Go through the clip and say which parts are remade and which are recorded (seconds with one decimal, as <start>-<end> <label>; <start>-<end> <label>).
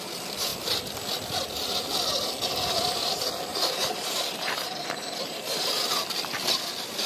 0.0-3.5 recorded; 3.5-5.7 remade; 5.7-7.1 recorded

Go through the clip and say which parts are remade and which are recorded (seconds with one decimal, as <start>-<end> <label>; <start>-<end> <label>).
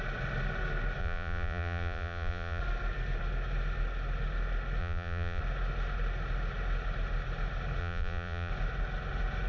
0.0-1.0 recorded; 1.0-2.6 remade; 2.6-4.8 recorded; 4.8-5.4 remade; 5.4-7.8 recorded; 7.8-8.5 remade; 8.5-9.5 recorded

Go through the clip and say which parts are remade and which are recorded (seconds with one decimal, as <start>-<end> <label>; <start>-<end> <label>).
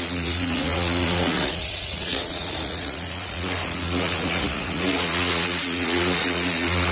0.0-6.9 remade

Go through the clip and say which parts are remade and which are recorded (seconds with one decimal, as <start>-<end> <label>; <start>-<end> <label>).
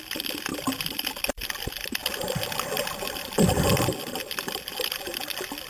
0.0-5.7 recorded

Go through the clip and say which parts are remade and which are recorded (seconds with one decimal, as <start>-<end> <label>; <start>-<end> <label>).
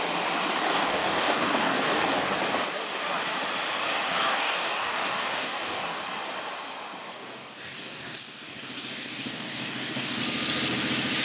0.0-0.6 recorded; 0.6-2.3 remade; 2.3-4.1 recorded; 4.1-6.0 remade; 6.0-7.0 recorded; 7.0-10.2 remade; 10.2-11.2 recorded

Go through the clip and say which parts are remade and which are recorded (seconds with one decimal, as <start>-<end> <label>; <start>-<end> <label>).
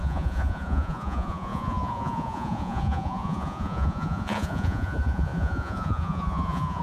0.0-6.8 remade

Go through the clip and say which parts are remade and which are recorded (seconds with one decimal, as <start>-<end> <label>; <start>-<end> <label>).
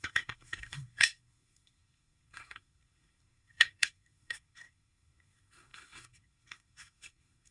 0.0-7.5 remade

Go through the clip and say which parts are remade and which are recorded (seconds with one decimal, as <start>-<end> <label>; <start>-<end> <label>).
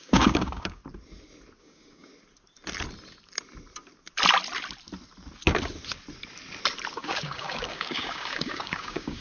0.0-0.8 remade; 0.8-1.6 recorded; 1.6-2.1 remade; 2.1-6.9 recorded; 6.9-9.2 remade